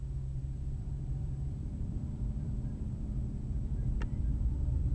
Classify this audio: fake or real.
fake